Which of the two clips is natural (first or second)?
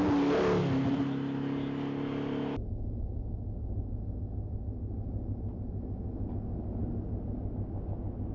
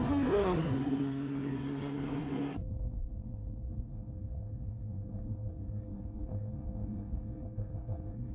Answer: first